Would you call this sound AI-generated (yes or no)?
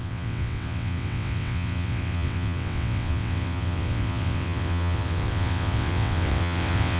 yes